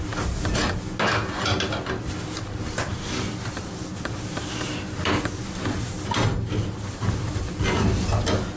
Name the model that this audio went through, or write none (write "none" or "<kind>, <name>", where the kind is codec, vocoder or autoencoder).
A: none